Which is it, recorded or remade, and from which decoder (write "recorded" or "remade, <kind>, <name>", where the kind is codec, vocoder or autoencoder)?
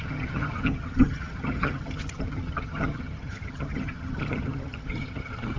remade, vocoder, HiFi-GAN